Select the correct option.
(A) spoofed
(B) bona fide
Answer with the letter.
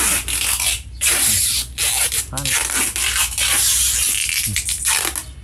B